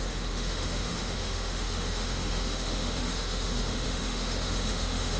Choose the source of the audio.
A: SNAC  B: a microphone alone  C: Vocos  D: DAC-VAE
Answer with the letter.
D